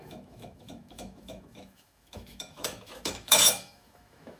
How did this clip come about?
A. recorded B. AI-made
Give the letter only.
B